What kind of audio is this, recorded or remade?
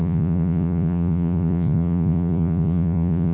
remade